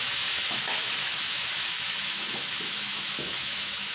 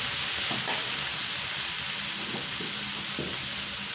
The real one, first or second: second